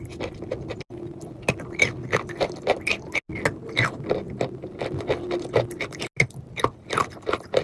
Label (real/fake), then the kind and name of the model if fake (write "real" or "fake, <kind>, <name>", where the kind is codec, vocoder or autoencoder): real